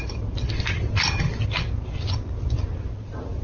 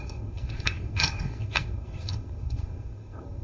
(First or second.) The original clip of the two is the first